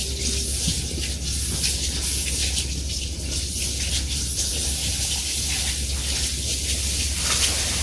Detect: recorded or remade recorded